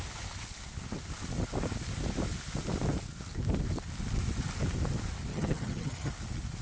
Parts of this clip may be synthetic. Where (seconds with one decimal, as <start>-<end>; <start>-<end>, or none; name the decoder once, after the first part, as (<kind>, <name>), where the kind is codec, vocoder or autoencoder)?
5.3-6.1 (vocoder, HiFi-GAN)